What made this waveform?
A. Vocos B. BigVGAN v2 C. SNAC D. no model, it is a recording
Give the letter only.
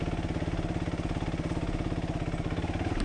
D